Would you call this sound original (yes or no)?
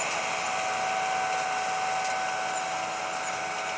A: yes